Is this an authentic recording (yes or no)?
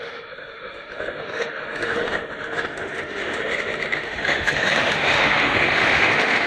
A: no